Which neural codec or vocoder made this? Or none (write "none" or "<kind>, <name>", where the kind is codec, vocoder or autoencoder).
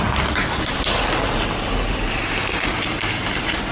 none